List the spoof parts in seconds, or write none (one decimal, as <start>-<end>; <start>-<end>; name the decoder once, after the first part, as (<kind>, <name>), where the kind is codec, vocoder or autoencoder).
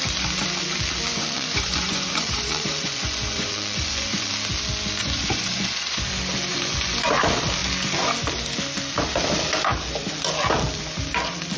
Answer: 1.1-4.3 (vocoder, Vocos); 5.0-6.0; 6.5-7.1